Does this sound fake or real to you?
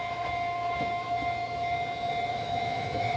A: fake